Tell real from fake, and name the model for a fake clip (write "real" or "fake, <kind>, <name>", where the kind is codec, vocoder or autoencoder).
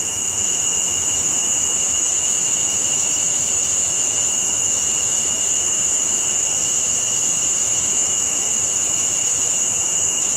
fake, autoencoder, DAC-VAE